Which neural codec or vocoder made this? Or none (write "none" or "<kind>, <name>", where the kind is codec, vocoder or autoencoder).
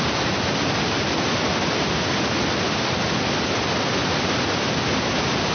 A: none